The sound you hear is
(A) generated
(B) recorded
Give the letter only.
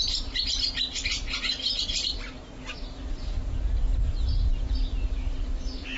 B